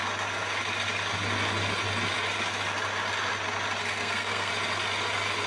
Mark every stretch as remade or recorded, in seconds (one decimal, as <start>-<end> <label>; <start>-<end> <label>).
0.0-3.8 recorded; 3.8-4.5 remade; 4.5-5.5 recorded

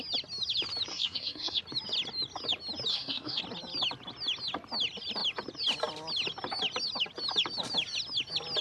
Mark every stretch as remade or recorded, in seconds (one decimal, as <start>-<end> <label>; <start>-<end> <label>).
0.0-0.9 recorded; 0.9-1.6 remade; 1.6-2.9 recorded; 2.9-3.4 remade; 3.4-8.6 recorded